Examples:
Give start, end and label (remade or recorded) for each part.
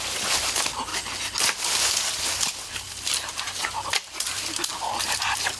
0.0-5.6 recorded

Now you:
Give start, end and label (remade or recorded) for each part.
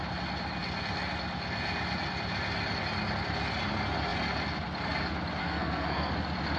0.0-5.4 recorded; 5.4-6.1 remade; 6.1-6.6 recorded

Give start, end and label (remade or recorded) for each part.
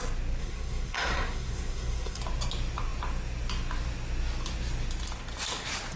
0.0-0.4 recorded; 0.4-2.2 remade; 2.2-6.0 recorded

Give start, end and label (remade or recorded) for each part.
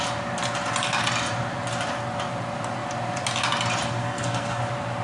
0.0-4.0 recorded; 4.0-4.6 remade; 4.6-5.0 recorded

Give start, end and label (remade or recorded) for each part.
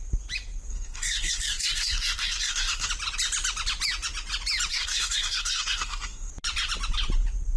0.0-0.7 recorded; 0.7-2.9 remade; 2.9-4.7 recorded; 4.7-6.3 remade; 6.3-7.6 recorded